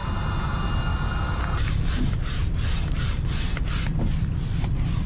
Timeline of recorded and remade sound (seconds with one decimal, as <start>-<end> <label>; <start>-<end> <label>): 0.0-5.1 recorded